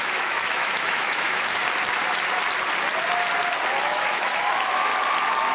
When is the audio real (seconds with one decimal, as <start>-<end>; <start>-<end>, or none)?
1.6-3.8; 4.9-5.5